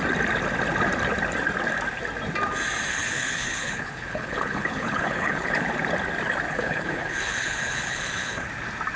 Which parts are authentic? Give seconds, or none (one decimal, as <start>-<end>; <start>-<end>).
0.0-2.9; 5.6-6.5; 8.5-9.0